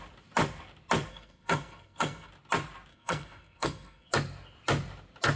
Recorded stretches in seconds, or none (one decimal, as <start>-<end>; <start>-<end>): 0.0-1.1; 2.3-2.9; 4.1-5.4